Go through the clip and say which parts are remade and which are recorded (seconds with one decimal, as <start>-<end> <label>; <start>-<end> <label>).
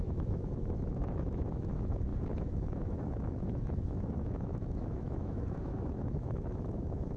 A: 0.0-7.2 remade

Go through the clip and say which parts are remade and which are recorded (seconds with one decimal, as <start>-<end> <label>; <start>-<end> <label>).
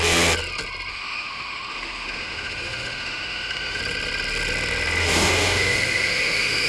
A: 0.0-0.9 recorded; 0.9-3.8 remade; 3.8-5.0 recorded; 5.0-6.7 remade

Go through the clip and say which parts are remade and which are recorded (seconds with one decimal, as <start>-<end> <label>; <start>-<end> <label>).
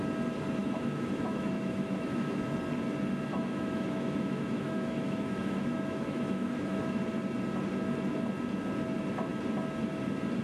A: 0.0-0.6 recorded; 0.6-2.5 remade; 2.5-3.3 recorded; 3.3-7.0 remade; 7.0-10.4 recorded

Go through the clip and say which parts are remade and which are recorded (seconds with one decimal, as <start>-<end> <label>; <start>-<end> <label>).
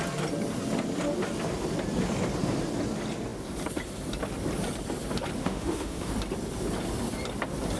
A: 0.0-5.4 recorded; 5.4-6.1 remade; 6.1-7.8 recorded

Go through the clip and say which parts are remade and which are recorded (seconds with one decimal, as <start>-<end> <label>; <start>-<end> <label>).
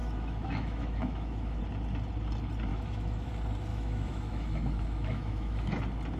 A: 0.0-1.6 remade; 1.6-2.7 recorded; 2.7-3.3 remade; 3.3-3.7 recorded; 3.7-5.8 remade; 5.8-6.2 recorded